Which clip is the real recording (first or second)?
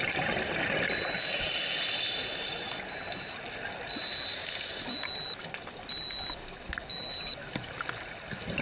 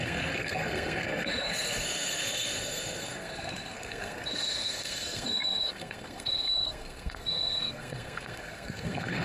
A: first